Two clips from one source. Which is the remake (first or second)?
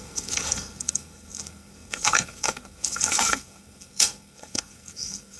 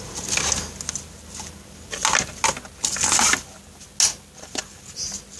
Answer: first